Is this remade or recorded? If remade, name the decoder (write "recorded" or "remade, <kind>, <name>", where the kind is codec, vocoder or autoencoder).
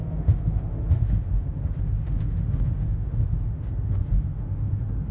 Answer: remade, autoencoder, DAC-VAE